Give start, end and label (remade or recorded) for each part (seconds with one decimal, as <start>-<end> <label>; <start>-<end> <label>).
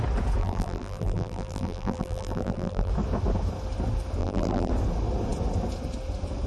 0.0-0.4 recorded; 0.4-2.9 remade; 2.9-4.2 recorded; 4.2-4.7 remade; 4.7-6.5 recorded